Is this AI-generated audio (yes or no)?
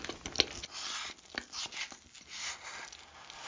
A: no